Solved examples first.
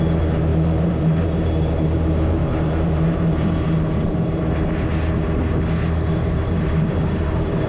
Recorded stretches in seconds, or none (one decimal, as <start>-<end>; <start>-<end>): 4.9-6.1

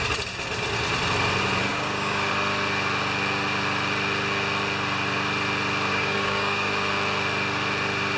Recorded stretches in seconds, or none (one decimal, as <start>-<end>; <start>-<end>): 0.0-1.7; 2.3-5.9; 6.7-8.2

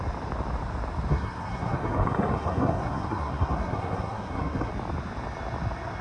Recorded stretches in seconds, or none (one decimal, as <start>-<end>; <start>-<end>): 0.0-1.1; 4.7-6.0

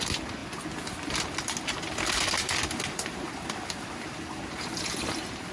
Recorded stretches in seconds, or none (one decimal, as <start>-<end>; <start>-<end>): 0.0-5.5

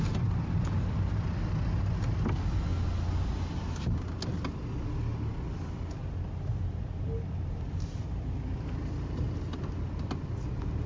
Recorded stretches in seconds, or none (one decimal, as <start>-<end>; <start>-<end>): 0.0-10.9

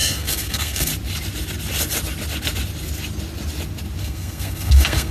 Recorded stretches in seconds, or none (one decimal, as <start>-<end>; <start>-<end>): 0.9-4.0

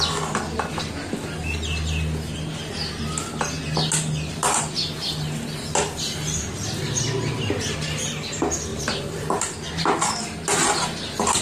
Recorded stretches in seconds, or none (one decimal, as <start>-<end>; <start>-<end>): 0.0-8.7; 9.4-11.4